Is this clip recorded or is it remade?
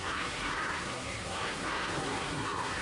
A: remade